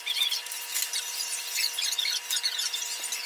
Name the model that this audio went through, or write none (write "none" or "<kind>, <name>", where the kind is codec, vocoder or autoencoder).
vocoder, BigVGAN v2